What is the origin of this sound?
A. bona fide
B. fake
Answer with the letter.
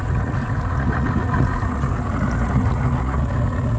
B